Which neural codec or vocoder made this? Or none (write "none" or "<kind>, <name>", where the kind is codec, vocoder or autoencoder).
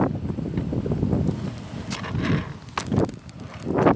none